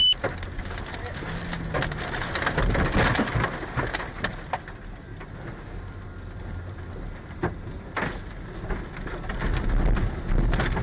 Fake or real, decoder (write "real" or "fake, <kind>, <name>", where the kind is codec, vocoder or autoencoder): real